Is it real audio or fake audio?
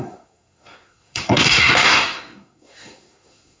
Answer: fake